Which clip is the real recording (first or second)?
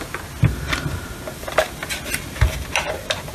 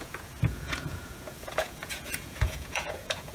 first